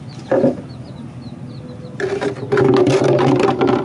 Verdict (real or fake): real